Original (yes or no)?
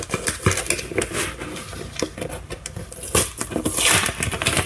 yes